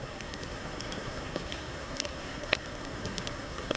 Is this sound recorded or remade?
remade